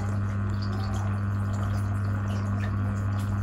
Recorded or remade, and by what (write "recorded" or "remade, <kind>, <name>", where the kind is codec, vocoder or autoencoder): recorded